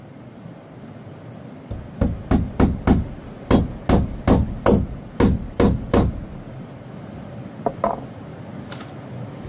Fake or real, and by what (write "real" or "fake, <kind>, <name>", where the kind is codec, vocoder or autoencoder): real